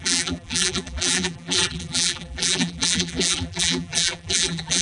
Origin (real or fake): fake